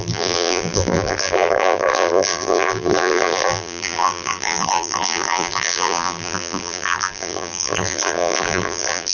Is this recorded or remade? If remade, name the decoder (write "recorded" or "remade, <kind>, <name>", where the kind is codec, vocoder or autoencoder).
remade, vocoder, BigVGAN v2